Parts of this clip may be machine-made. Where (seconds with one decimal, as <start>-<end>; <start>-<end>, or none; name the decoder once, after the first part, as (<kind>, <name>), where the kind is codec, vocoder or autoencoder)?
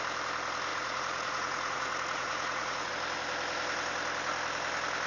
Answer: 0.7-2.9 (vocoder, Vocos)